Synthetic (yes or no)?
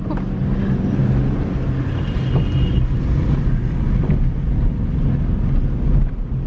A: no